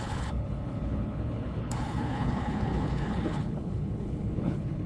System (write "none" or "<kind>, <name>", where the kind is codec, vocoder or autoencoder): codec, HILCodec